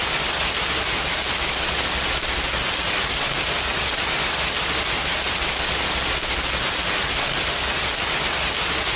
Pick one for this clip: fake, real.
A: real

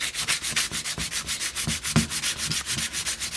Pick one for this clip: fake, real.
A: real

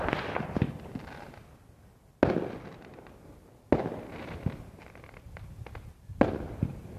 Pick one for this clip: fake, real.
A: real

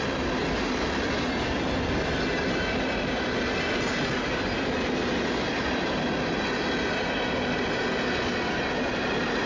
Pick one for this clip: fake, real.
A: real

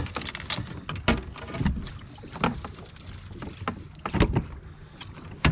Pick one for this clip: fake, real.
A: real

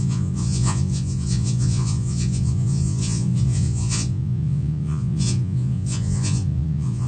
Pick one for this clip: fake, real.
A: fake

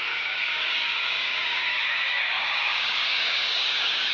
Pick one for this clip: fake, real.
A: fake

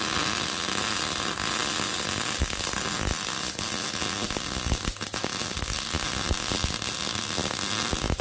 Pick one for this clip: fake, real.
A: real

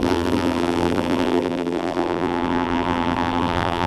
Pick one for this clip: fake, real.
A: fake